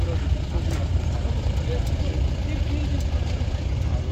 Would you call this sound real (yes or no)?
yes